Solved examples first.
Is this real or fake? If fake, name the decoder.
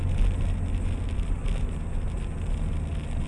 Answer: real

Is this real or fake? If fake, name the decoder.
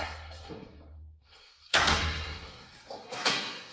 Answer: fake, codec, SNAC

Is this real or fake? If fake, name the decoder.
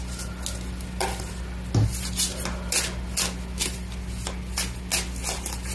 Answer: real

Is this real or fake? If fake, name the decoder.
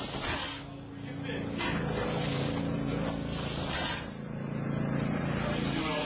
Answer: real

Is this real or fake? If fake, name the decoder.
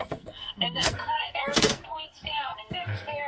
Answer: fake, codec, SNAC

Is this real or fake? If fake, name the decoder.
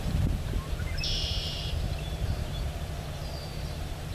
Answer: fake, vocoder, BigVGAN v2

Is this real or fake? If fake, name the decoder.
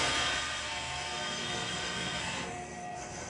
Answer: fake, codec, SNAC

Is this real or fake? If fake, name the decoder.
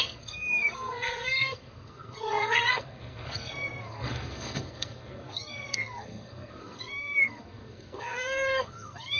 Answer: fake, codec, SNAC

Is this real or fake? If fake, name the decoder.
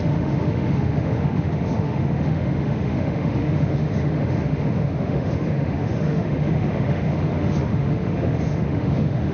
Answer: fake, autoencoder, DAC-VAE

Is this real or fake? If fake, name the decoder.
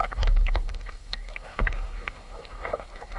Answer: fake, codec, SNAC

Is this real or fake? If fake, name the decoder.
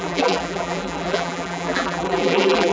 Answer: fake, vocoder, BigVGAN v2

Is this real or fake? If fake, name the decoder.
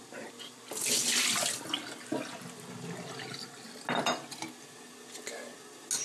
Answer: real